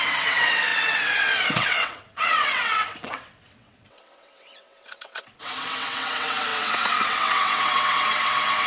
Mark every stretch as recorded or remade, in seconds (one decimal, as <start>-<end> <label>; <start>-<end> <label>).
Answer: 0.0-8.7 remade